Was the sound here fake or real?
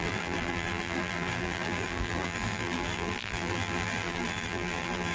fake